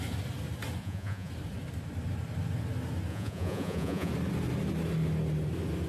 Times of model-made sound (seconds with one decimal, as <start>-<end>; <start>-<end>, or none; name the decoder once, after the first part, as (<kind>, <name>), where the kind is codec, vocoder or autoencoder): 0.8-1.3 (vocoder, Vocos); 3.1-4.1